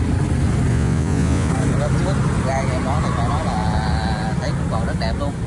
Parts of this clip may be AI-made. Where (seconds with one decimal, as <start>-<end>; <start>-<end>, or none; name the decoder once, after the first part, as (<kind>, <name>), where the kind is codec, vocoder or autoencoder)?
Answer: 0.7-1.5 (vocoder, Vocos)